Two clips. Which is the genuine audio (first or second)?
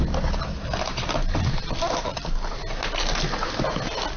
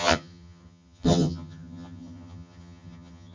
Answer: first